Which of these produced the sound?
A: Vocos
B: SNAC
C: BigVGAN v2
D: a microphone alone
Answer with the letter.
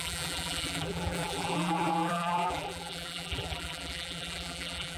C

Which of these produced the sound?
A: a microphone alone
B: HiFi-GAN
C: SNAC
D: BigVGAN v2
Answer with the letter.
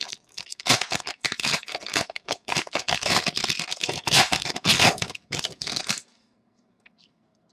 C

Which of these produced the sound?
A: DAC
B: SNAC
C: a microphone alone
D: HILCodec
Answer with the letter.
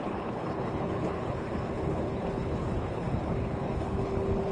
D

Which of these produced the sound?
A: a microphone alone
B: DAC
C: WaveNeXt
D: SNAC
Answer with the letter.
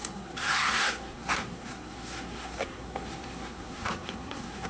D